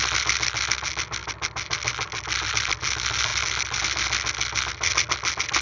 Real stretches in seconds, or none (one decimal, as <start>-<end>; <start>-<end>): 0.0-5.6